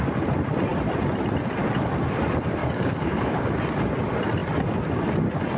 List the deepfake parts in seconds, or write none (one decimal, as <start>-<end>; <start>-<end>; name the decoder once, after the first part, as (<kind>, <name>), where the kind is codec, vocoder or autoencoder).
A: 2.6-3.5 (codec, DAC)